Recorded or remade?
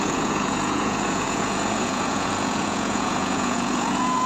remade